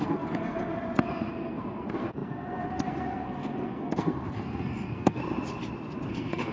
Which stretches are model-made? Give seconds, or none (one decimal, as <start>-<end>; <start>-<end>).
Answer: 0.0-0.7; 1.3-5.2; 6.1-6.5